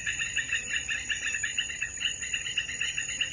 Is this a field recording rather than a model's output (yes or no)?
no